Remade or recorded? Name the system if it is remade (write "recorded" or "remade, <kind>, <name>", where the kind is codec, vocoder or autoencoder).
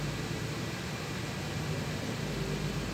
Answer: recorded